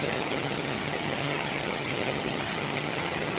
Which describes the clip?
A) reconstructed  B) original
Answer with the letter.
A